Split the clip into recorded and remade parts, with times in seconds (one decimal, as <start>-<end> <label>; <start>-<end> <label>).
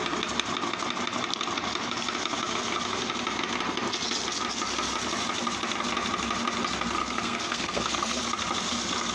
0.0-7.0 recorded; 7.0-8.2 remade; 8.2-9.1 recorded